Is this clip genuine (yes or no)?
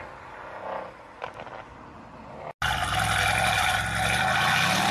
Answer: yes